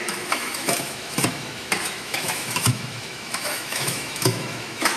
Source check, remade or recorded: remade